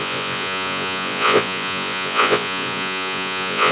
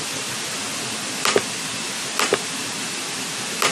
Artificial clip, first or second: first